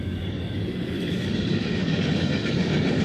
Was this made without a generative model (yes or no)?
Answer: no